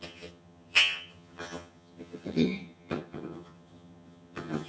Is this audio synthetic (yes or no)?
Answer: yes